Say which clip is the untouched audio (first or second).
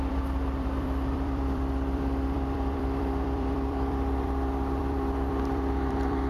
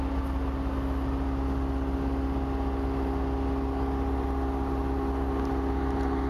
second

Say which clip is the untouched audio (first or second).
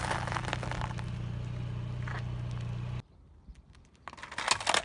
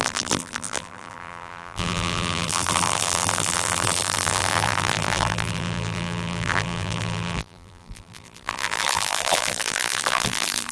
first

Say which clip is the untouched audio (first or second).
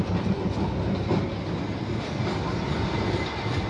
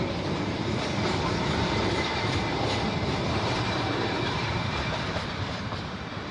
first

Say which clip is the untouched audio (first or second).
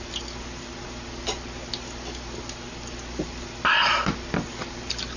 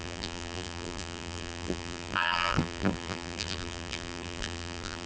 first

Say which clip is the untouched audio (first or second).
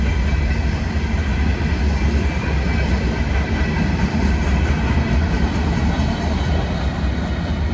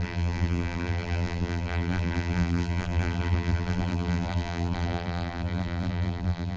first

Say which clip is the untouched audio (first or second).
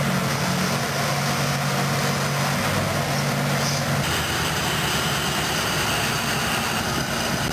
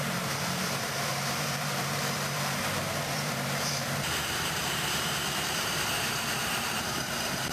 first